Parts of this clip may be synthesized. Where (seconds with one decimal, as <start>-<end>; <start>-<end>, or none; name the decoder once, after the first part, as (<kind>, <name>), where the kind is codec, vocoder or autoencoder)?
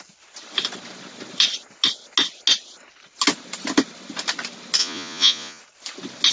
4.8-5.6 (vocoder, Vocos)